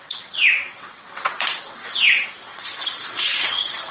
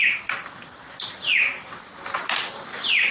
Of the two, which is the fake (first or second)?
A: first